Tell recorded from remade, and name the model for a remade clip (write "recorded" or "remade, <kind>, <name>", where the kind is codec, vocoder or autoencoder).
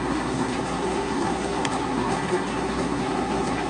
remade, codec, SNAC